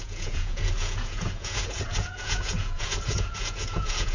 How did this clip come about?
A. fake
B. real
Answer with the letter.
A